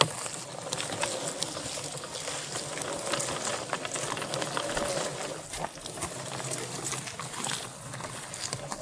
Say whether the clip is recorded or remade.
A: recorded